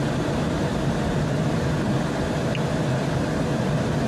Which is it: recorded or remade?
remade